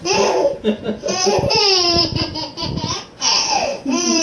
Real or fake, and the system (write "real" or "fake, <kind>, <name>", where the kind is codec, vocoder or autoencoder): fake, vocoder, Vocos